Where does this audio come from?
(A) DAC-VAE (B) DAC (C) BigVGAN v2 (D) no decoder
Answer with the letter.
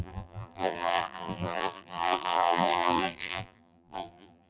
C